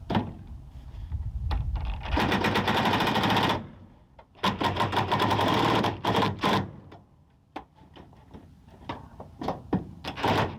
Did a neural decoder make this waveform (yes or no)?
yes